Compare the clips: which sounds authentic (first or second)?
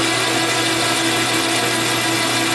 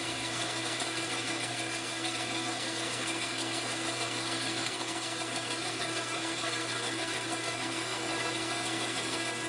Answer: first